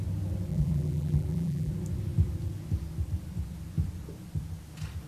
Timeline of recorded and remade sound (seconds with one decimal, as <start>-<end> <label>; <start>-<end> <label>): 0.0-0.5 recorded; 0.5-1.7 remade; 1.7-5.1 recorded